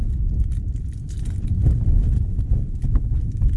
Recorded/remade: recorded